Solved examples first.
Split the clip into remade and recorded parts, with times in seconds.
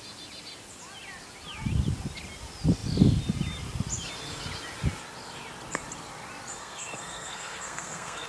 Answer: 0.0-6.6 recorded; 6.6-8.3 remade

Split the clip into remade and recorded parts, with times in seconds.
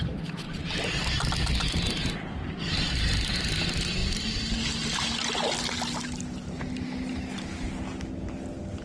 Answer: 0.0-8.8 recorded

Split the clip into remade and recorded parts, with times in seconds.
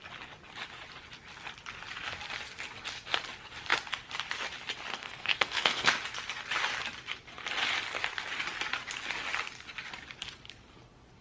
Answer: 0.0-4.9 recorded; 4.9-5.9 remade; 5.9-11.2 recorded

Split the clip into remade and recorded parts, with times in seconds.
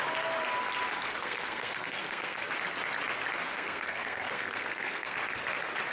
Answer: 0.0-1.0 recorded; 1.0-2.5 remade; 2.5-3.5 recorded; 3.5-5.2 remade; 5.2-5.9 recorded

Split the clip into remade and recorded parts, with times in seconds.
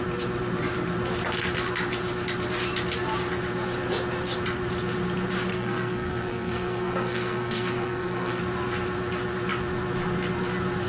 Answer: 0.0-5.5 recorded; 5.5-8.4 remade; 8.4-10.9 recorded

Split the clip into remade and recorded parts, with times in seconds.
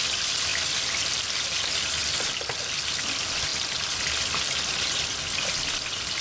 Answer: 0.0-6.2 recorded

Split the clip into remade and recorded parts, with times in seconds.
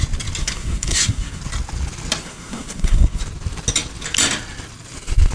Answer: 0.0-0.4 recorded; 0.4-1.4 remade; 1.4-2.2 recorded; 2.2-3.2 remade; 3.2-5.3 recorded